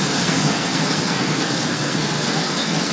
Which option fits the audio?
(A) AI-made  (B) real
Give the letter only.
A